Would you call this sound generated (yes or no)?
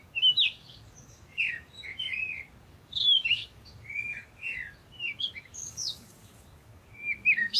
yes